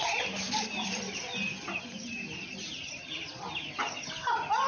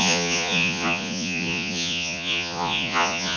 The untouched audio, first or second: first